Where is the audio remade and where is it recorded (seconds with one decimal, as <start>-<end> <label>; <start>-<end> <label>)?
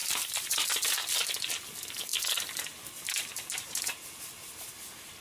0.0-5.2 remade